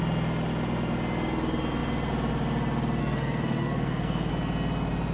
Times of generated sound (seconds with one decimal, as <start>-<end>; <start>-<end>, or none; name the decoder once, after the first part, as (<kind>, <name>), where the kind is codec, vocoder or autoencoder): 3.0-4.3 (codec, SNAC)